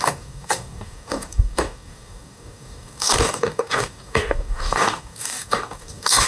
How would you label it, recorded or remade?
remade